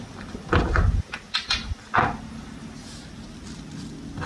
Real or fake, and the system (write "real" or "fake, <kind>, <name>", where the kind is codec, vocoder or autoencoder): real